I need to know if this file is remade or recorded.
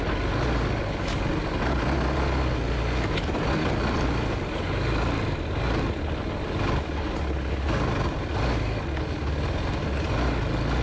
recorded